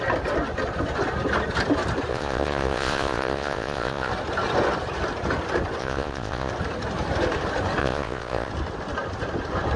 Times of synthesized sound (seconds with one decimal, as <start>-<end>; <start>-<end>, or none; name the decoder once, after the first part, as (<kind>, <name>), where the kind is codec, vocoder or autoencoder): 2.1-4.1 (vocoder, Vocos); 5.8-6.5; 7.8-8.5